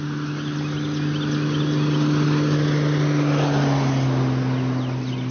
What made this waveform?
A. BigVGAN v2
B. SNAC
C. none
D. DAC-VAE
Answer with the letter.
C